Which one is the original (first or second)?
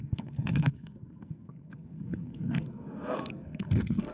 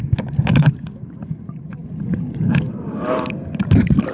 second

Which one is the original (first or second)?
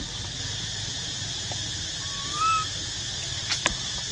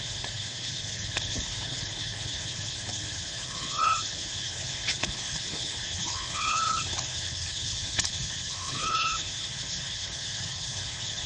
first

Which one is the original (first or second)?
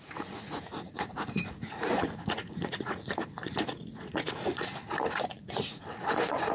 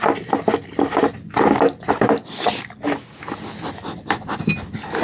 second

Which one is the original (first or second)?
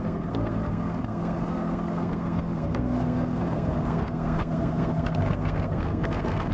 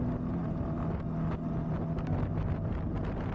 second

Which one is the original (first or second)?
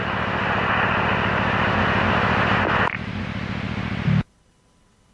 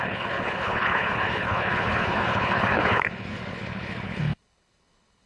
first